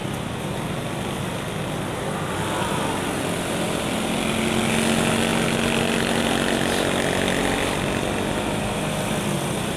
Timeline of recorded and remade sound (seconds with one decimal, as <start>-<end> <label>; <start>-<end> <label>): 0.0-9.8 recorded